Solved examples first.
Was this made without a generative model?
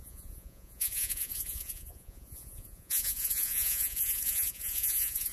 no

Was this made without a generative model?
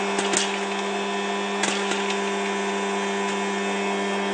yes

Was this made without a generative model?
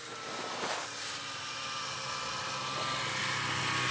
yes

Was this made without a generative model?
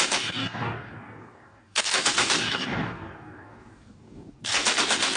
no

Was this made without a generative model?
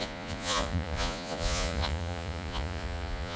no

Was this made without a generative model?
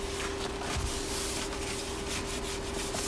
yes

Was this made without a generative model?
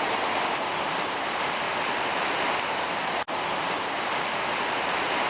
yes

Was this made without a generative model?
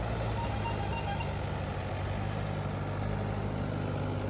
yes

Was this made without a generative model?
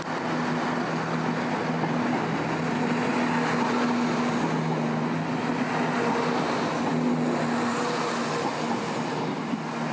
yes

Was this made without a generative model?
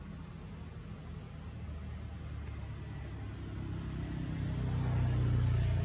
yes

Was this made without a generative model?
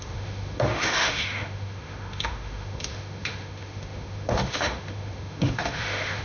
no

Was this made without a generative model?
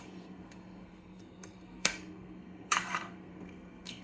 no